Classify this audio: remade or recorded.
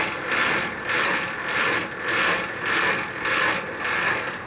recorded